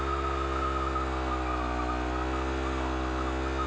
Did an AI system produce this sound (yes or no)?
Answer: no